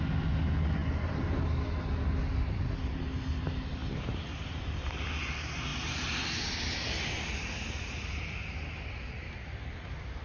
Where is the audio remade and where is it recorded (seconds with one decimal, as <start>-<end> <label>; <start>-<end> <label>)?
0.0-10.2 recorded